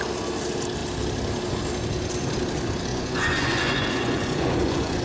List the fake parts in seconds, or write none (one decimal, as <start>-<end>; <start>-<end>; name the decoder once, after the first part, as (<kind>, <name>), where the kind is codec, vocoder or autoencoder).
2.9-5.0 (vocoder, Vocos)